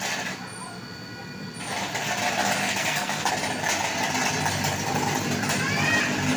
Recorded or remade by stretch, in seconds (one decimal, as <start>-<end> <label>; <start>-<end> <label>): 0.0-2.6 recorded; 2.6-3.3 remade; 3.3-6.4 recorded

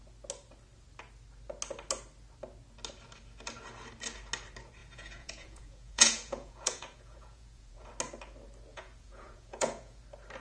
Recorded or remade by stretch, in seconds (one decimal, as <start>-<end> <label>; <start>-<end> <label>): 0.0-4.8 recorded; 4.8-7.9 remade; 7.9-8.7 recorded; 8.7-10.0 remade; 10.0-10.4 recorded

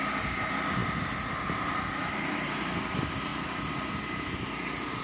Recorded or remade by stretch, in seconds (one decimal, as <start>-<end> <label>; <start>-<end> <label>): 0.0-5.0 recorded

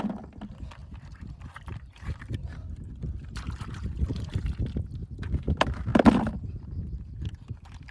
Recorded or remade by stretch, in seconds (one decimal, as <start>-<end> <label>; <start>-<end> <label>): 0.0-0.8 recorded; 0.8-4.6 remade; 4.6-5.9 recorded; 5.9-6.5 remade; 6.5-7.9 recorded

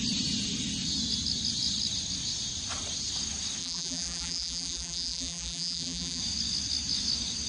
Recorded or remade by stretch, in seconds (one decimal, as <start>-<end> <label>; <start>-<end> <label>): 0.0-3.6 recorded; 3.6-6.2 remade; 6.2-7.5 recorded

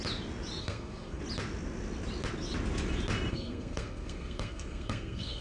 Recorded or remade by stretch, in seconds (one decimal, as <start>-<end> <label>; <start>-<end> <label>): 0.0-0.6 recorded; 0.6-1.2 remade; 1.2-3.3 recorded; 3.3-5.4 remade

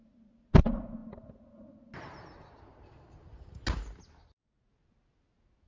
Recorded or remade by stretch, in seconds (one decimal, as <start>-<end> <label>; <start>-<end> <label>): 0.0-5.7 recorded

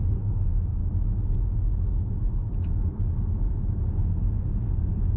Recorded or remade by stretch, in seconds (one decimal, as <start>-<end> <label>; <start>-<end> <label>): 0.0-0.8 remade; 0.8-3.9 recorded; 3.9-5.2 remade